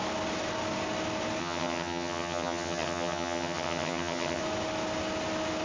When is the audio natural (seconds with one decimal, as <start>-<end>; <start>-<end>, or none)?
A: 0.0-1.4; 4.4-5.6